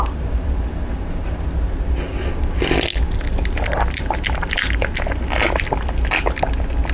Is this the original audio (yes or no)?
yes